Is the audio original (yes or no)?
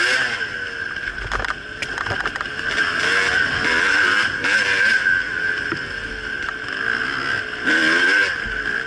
yes